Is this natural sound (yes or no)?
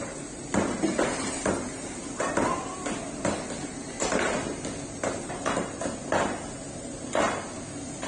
yes